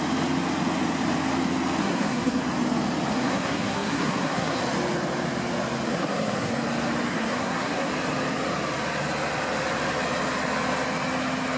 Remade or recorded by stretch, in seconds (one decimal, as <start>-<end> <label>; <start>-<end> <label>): 0.0-1.8 recorded; 1.8-2.4 remade; 2.4-3.1 recorded; 3.1-4.6 remade; 4.6-5.9 recorded; 5.9-6.5 remade; 6.5-7.1 recorded; 7.1-7.9 remade; 7.9-11.6 recorded